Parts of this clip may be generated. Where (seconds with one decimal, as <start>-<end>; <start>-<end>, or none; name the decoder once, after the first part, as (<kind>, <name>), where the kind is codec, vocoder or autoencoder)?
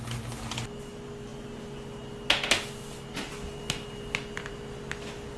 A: none